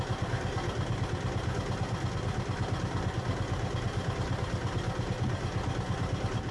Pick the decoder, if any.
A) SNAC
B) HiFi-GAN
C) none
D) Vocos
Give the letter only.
C